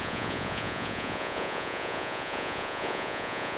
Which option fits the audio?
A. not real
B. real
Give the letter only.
A